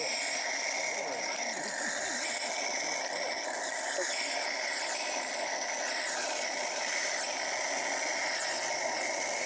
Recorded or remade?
recorded